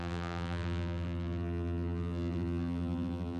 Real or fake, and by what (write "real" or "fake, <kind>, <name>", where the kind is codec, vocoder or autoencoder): fake, vocoder, BigVGAN v2